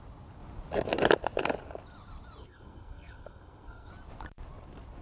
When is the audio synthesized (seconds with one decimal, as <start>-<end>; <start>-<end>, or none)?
2.4-3.9